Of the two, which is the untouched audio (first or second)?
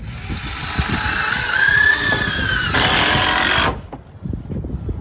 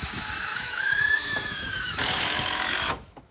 first